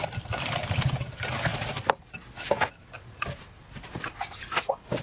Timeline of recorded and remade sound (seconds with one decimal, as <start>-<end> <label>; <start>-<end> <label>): 0.0-5.0 recorded